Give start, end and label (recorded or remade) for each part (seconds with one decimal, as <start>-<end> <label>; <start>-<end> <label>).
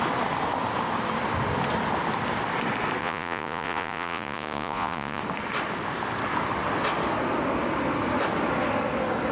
0.0-3.0 recorded; 3.0-5.2 remade; 5.2-9.3 recorded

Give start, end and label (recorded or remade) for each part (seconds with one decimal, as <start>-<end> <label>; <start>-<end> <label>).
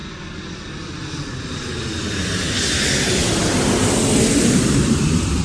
0.0-5.4 recorded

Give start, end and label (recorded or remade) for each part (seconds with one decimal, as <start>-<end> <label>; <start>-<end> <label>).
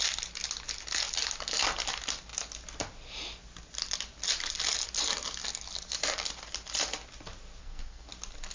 0.0-7.6 recorded; 7.6-8.1 remade; 8.1-8.5 recorded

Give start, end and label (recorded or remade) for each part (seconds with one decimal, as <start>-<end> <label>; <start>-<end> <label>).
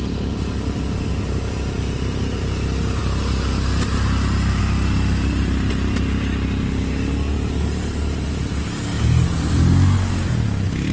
0.0-10.9 recorded